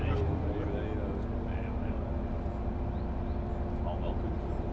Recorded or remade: recorded